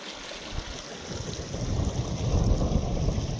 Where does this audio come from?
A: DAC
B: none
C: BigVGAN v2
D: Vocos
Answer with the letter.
B